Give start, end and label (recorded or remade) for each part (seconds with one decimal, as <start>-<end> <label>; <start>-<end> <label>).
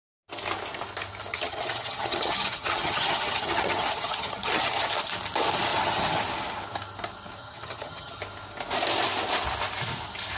0.0-1.3 recorded; 1.3-4.9 remade; 4.9-5.7 recorded; 5.7-6.2 remade; 6.2-7.4 recorded; 7.4-8.2 remade; 8.2-10.4 recorded